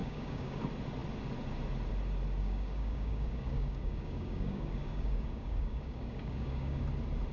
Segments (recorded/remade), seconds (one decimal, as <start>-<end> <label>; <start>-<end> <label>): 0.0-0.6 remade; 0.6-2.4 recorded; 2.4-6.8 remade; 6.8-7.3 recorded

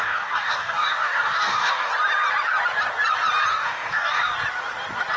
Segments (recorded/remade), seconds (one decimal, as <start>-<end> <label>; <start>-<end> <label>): 0.0-1.9 remade; 1.9-3.5 recorded; 3.5-4.3 remade; 4.3-5.2 recorded

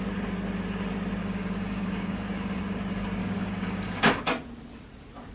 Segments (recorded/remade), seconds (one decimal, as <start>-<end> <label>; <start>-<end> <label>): 0.0-1.2 recorded; 1.2-2.6 remade; 2.6-3.2 recorded; 3.2-4.2 remade; 4.2-5.3 recorded

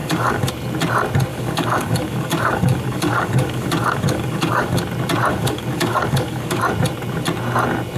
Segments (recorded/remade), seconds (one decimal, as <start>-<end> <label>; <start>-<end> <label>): 0.0-0.5 remade; 0.5-1.3 recorded; 1.3-4.8 remade; 4.8-5.3 recorded; 5.3-6.6 remade; 6.6-8.0 recorded

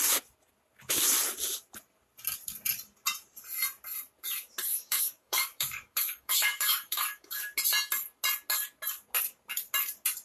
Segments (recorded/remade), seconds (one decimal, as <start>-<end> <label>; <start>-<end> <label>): 0.0-4.7 recorded; 4.7-7.3 remade; 7.3-10.2 recorded

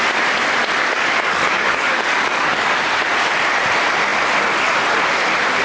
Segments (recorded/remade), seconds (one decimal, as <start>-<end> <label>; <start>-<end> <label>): 0.0-0.8 recorded; 0.8-2.8 remade; 2.8-5.6 recorded

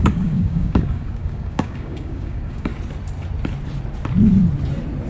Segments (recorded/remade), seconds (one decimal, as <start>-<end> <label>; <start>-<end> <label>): 0.0-2.7 remade; 2.7-5.1 recorded

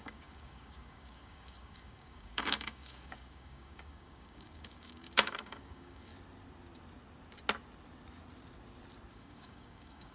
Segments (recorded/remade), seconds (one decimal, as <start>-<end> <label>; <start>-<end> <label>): 0.0-6.1 remade; 6.1-9.1 recorded; 9.1-10.1 remade